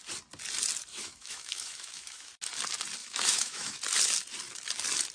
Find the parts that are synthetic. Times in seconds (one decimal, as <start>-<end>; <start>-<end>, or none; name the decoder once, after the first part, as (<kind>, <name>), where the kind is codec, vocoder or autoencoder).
0.9-2.3 (autoencoder, DAC-VAE); 3.0-3.8